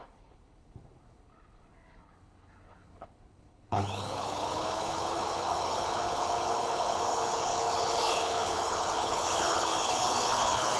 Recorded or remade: remade